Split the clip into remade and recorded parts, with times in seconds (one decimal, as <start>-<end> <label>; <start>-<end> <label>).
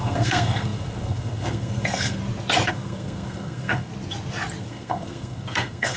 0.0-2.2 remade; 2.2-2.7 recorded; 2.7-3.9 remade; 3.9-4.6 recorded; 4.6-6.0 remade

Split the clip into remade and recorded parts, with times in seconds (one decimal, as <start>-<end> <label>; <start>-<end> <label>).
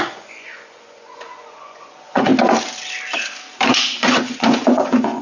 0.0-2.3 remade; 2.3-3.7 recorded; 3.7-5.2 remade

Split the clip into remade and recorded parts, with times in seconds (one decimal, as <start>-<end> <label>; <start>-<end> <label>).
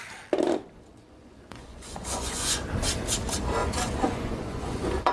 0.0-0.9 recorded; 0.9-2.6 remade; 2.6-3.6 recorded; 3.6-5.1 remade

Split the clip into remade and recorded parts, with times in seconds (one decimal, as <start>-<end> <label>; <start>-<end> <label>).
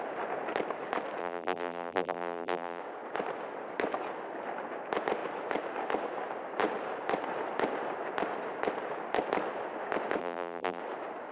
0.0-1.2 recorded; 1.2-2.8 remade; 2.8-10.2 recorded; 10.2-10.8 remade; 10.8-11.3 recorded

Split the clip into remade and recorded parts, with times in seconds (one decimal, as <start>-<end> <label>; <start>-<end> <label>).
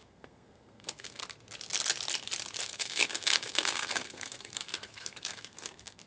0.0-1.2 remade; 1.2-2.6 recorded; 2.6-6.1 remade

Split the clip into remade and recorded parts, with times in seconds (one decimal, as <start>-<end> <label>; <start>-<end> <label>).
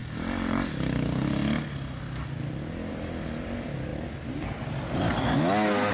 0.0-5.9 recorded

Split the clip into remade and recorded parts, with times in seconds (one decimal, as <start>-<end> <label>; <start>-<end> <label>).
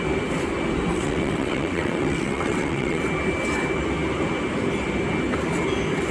0.0-0.9 recorded; 0.9-3.0 remade; 3.0-6.1 recorded